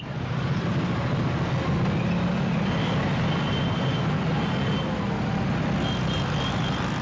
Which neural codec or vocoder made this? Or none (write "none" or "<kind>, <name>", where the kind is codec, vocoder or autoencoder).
none